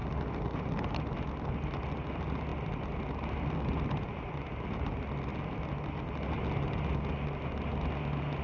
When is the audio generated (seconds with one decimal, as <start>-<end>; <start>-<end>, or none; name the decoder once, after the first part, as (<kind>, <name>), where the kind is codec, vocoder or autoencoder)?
none